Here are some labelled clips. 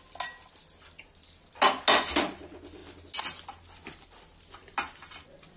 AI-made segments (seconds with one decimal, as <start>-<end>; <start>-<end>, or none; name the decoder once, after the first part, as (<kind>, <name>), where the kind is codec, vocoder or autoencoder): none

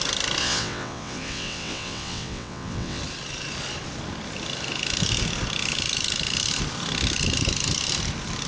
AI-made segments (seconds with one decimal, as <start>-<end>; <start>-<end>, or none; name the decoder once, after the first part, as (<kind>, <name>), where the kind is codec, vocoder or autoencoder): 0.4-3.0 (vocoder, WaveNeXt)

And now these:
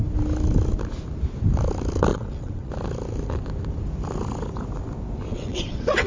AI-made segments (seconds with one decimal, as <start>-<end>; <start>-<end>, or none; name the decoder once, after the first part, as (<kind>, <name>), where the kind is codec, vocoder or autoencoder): 2.1-2.7 (vocoder, WaveNeXt); 5.3-6.1